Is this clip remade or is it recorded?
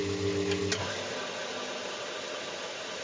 recorded